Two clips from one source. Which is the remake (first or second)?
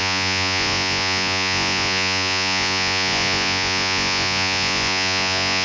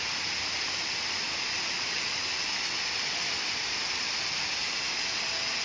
first